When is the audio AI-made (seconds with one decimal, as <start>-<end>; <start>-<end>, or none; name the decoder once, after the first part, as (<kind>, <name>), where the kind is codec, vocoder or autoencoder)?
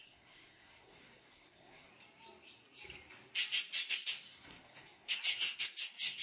0.0-1.9 (codec, SNAC); 3.9-6.2